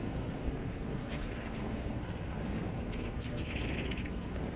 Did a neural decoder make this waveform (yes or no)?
yes